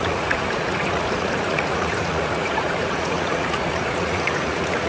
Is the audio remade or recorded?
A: remade